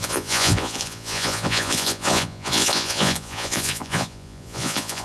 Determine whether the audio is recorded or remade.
remade